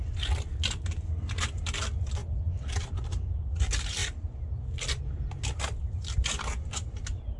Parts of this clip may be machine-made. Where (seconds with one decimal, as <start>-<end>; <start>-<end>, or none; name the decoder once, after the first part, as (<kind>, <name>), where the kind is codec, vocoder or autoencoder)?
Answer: none